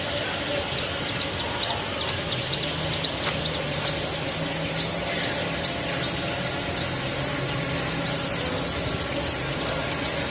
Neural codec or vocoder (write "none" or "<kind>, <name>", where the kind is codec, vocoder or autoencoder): none